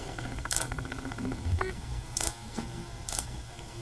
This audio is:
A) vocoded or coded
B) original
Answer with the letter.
A